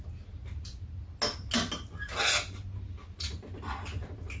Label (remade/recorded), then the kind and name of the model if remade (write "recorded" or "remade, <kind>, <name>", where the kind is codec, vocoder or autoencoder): recorded